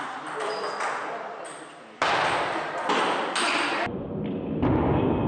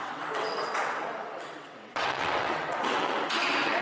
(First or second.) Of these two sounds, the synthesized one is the second